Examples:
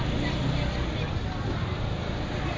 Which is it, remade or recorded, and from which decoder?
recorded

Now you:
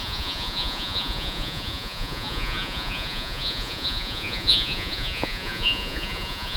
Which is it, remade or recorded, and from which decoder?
remade, vocoder, Vocos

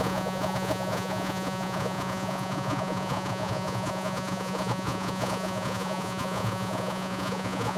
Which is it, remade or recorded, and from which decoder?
remade, vocoder, Vocos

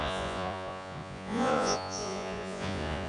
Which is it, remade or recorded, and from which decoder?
remade, vocoder, Vocos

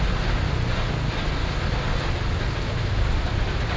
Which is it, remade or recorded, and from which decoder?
recorded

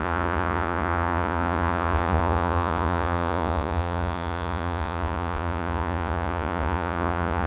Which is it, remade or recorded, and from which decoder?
remade, vocoder, Vocos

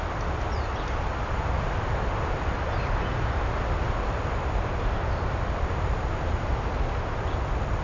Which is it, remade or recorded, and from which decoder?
recorded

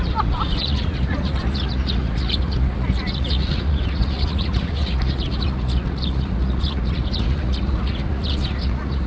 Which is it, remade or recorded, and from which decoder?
remade, vocoder, Vocos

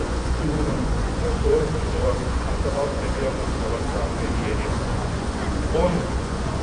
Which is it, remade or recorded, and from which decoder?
remade, vocoder, Vocos